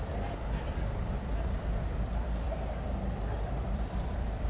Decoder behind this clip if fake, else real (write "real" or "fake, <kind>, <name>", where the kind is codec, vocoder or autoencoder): fake, vocoder, BigVGAN v2